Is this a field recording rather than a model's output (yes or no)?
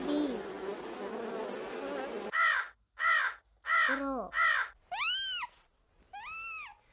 yes